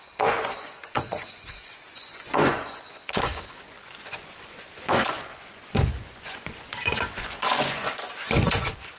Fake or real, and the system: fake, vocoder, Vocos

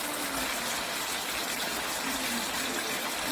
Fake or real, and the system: real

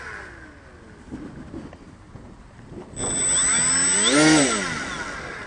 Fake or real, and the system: real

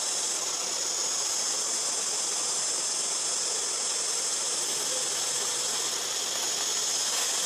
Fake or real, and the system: real